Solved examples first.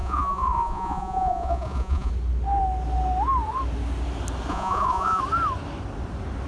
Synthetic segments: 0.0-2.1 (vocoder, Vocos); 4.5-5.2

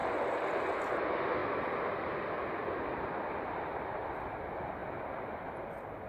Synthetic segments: 0.0-0.9 (vocoder, BigVGAN v2); 1.4-3.5; 4.8-6.1

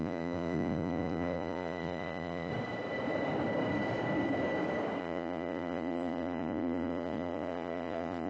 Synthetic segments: 0.0-2.5 (vocoder, Vocos); 5.0-8.3